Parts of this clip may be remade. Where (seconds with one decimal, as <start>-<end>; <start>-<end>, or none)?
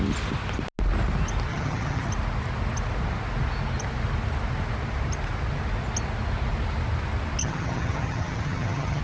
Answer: 1.5-2.1; 7.4-9.0